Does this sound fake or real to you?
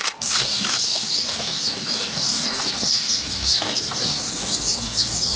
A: fake